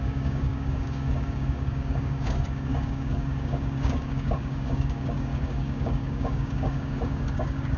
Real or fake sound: fake